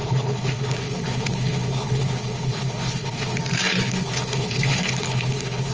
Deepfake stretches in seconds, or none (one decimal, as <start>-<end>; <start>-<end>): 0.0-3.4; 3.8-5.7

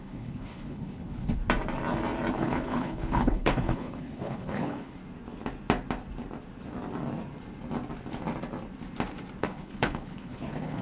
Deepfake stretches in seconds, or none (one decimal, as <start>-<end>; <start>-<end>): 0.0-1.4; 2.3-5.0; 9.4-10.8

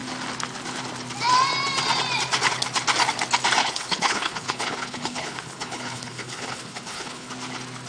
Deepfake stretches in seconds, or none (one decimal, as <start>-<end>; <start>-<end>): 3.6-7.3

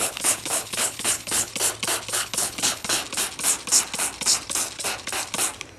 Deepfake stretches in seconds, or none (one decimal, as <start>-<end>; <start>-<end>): 0.0-1.5; 2.1-3.0

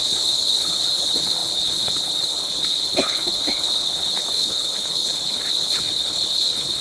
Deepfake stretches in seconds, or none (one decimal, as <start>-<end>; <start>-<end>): 0.0-6.8

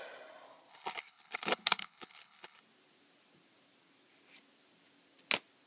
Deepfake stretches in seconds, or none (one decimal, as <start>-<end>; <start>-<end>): 0.7-2.6

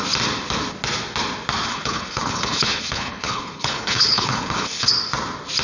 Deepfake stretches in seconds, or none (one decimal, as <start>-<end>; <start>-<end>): 1.7-4.9

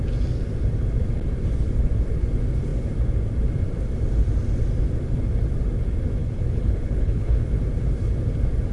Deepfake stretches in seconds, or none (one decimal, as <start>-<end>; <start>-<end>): 6.2-7.6